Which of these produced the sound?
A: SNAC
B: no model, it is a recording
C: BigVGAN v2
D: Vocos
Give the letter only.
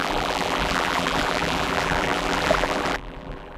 C